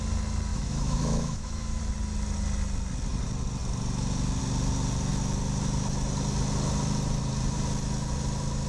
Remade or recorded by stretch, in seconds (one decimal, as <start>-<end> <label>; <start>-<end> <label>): 0.0-0.5 recorded; 0.5-1.8 remade; 1.8-8.7 recorded